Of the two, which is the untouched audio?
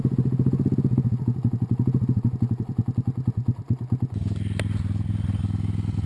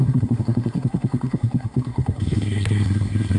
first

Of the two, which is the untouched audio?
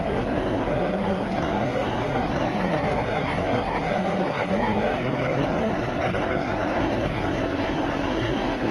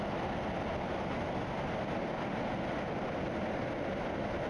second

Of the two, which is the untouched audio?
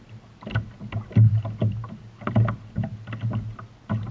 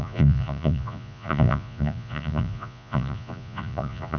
first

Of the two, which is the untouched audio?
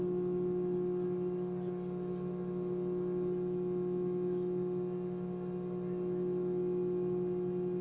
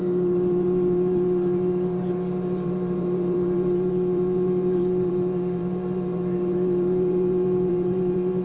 first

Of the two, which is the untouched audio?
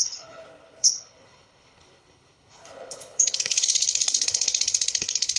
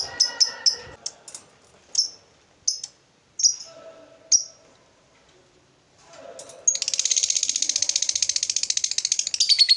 second